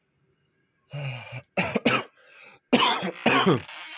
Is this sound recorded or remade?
recorded